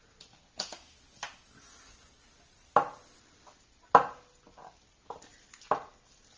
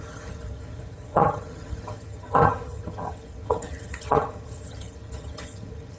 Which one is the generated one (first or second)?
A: second